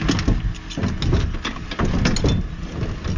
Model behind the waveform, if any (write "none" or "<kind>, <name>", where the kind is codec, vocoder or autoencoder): none